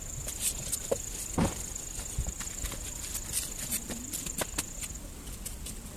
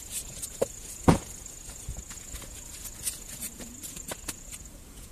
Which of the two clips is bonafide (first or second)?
first